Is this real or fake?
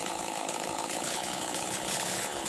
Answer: fake